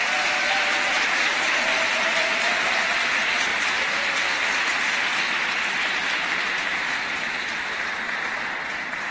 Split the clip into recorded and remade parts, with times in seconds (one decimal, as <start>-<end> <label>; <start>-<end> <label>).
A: 0.0-3.5 remade; 3.5-6.2 recorded; 6.2-7.4 remade; 7.4-8.7 recorded; 8.7-9.1 remade